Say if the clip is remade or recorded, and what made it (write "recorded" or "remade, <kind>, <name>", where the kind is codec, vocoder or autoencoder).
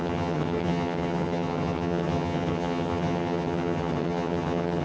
remade, vocoder, HiFi-GAN